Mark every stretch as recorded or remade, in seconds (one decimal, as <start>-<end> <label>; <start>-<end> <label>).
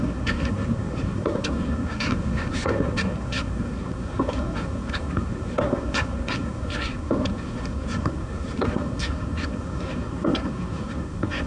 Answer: 0.0-11.5 remade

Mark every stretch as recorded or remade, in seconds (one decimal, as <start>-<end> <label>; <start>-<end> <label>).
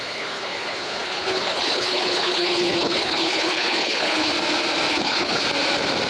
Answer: 0.0-4.3 remade; 4.3-4.9 recorded; 4.9-5.4 remade; 5.4-6.1 recorded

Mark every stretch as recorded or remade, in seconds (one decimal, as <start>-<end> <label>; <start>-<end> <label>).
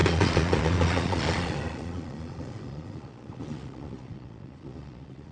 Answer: 0.0-5.3 remade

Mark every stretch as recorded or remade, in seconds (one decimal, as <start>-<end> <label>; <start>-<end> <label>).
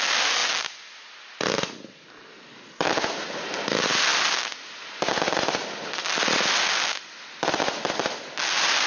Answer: 0.0-8.9 recorded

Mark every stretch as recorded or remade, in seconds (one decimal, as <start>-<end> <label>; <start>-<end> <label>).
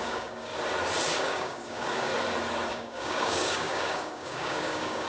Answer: 0.0-0.5 remade; 0.5-1.2 recorded; 1.2-2.1 remade; 2.1-2.7 recorded; 2.7-5.1 remade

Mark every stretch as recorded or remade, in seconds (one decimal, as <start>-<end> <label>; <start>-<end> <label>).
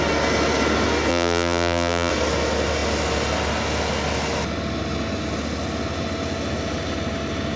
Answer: 0.0-1.1 recorded; 1.1-2.1 remade; 2.1-7.6 recorded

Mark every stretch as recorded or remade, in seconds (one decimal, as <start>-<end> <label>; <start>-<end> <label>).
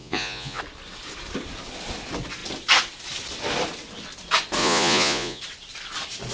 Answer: 0.0-0.6 remade; 0.6-4.6 recorded; 4.6-5.4 remade; 5.4-6.3 recorded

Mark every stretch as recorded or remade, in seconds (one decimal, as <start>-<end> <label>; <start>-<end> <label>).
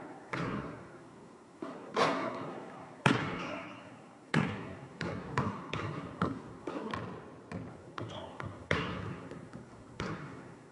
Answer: 0.0-6.9 remade; 6.9-7.7 recorded; 7.7-10.7 remade